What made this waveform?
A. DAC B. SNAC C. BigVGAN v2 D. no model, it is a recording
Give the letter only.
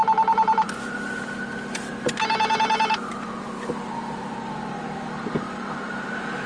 C